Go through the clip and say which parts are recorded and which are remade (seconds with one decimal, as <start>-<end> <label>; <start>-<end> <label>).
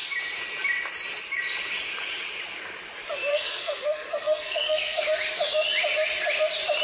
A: 0.0-3.3 recorded; 3.3-5.0 remade; 5.0-6.8 recorded